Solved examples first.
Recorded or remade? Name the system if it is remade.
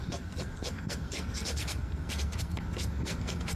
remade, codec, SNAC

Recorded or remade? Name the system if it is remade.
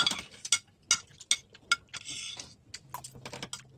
recorded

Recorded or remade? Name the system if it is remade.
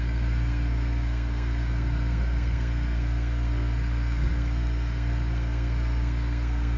remade, codec, SNAC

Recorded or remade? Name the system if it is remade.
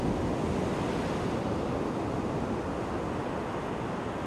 recorded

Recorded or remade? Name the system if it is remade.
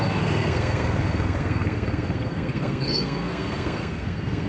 remade, codec, SNAC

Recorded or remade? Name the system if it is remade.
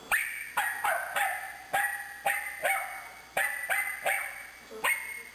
recorded